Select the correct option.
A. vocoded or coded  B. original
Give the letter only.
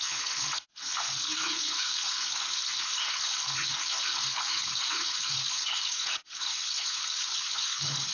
A